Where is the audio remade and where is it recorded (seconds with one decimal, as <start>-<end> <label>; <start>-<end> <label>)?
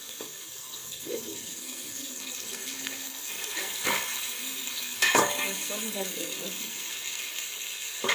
0.0-8.1 remade